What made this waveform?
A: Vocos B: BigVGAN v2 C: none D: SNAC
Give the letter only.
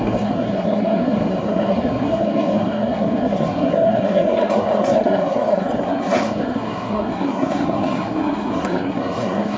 D